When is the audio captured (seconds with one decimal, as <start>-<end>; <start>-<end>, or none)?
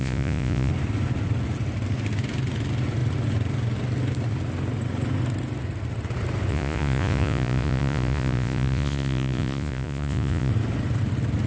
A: 0.7-6.5; 10.5-11.5